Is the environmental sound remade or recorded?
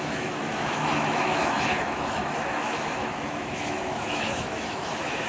remade